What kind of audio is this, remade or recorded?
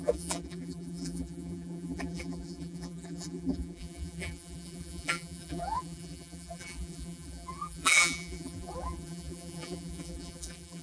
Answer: remade